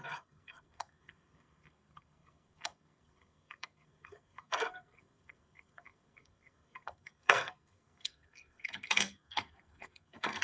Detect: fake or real fake